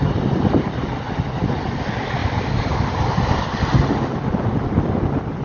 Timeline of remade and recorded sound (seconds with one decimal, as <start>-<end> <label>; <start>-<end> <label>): 0.0-5.4 recorded